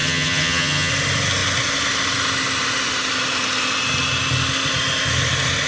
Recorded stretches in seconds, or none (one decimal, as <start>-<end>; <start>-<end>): 0.9-5.7